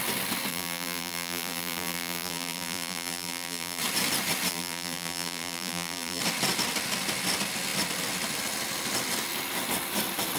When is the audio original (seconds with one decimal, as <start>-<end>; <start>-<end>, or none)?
0.0-0.5; 3.8-4.5; 6.2-10.4